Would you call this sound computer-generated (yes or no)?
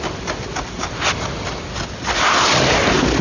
no